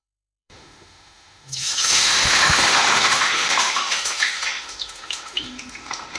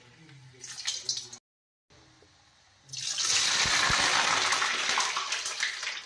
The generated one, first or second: first